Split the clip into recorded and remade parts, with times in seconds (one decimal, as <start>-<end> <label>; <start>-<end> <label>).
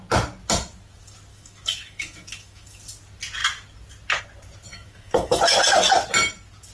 0.0-1.3 recorded; 1.3-2.8 remade; 2.8-4.7 recorded; 4.7-5.4 remade; 5.4-6.7 recorded